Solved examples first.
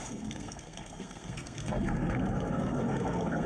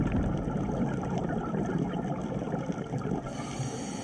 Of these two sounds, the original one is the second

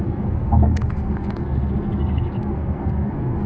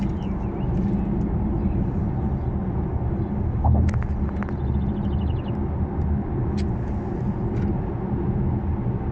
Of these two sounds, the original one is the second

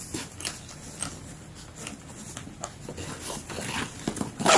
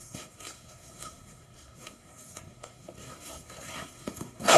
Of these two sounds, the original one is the first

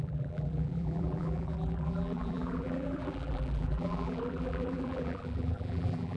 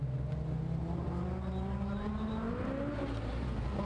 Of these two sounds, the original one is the second